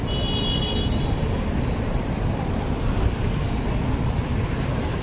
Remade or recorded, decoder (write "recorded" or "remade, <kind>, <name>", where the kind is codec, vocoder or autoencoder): remade, vocoder, BigVGAN v2